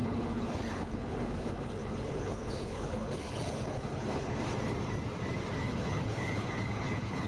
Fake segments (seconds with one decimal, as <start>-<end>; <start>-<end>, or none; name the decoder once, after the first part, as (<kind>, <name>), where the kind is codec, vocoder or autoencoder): 0.0-4.4 (codec, HILCodec); 5.6-7.3